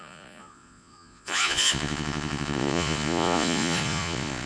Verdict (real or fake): fake